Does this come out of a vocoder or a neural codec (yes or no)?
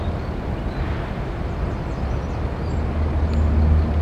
no